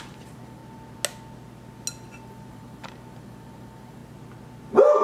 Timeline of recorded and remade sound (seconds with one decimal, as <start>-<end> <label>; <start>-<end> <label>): 0.0-0.6 remade; 0.6-2.5 recorded; 2.5-4.0 remade; 4.0-5.0 recorded